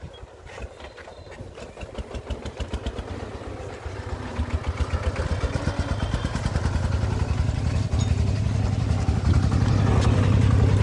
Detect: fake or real real